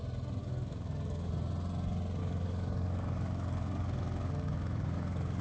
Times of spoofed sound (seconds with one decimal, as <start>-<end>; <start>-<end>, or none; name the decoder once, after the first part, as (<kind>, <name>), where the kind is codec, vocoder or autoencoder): 0.4-1.3 (codec, DAC); 2.2-5.4